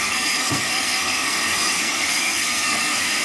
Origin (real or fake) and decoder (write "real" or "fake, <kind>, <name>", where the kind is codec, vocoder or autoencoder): fake, codec, SNAC